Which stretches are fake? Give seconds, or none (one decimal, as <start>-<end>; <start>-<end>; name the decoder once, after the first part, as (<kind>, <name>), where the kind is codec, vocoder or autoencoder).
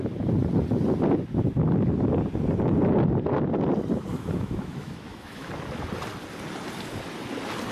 4.1-5.5 (autoencoder, DAC-VAE)